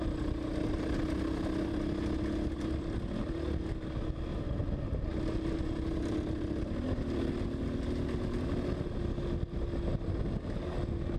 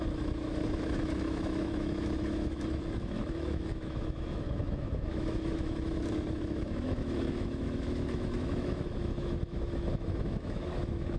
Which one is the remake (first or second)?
second